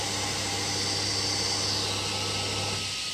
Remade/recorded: recorded